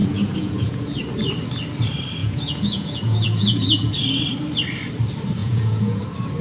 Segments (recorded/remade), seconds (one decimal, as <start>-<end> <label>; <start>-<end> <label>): 0.0-1.0 remade; 1.0-2.2 recorded; 2.2-4.2 remade; 4.2-5.4 recorded; 5.4-6.0 remade; 6.0-6.4 recorded

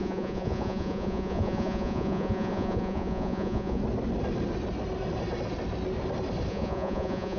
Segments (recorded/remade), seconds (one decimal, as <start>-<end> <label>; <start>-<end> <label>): 0.0-3.8 remade; 3.8-6.5 recorded; 6.5-7.4 remade